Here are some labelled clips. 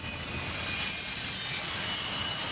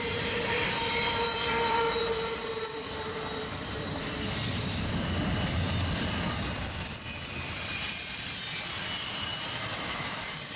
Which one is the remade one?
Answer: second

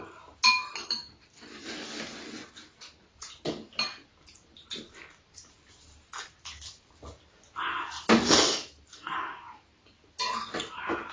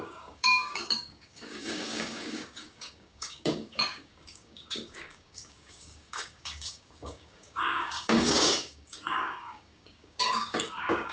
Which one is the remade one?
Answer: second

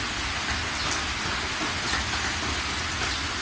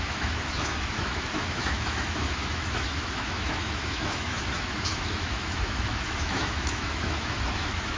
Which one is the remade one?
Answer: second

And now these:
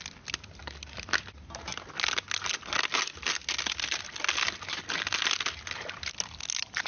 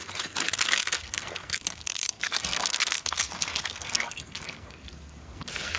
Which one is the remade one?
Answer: second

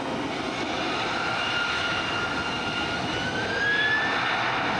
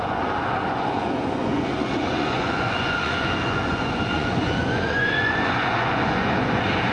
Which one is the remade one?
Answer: second